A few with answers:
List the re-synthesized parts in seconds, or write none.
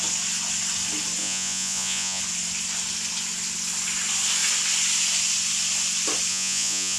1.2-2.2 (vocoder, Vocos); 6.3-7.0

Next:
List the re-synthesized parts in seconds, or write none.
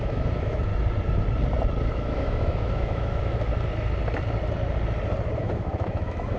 0.0-0.7 (autoencoder, DAC-VAE); 1.9-3.5; 5.4-6.4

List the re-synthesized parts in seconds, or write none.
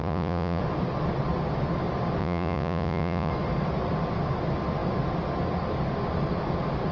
0.0-0.6 (vocoder, Vocos); 2.2-3.3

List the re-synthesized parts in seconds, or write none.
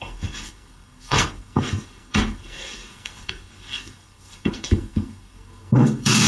0.0-6.3 (codec, SNAC)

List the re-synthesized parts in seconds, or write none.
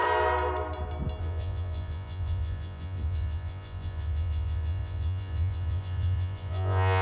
1.2-7.0 (vocoder, Vocos)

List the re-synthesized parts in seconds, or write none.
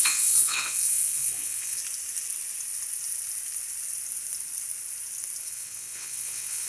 0.0-1.8 (vocoder, WaveNeXt); 5.4-6.7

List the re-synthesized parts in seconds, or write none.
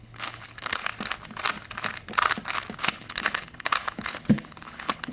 0.0-0.9 (codec, HILCodec); 2.8-5.1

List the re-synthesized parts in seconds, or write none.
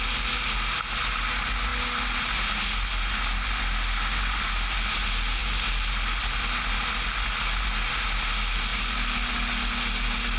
none